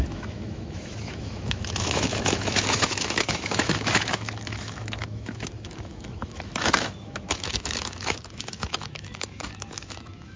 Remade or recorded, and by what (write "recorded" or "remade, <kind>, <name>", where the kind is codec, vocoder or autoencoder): remade, autoencoder, DAC-VAE